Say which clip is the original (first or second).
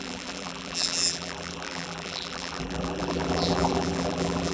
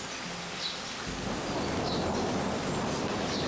second